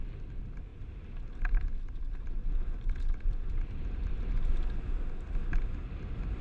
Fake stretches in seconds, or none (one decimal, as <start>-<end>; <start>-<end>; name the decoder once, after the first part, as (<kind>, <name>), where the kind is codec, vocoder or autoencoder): 0.7-4.5 (vocoder, BigVGAN v2)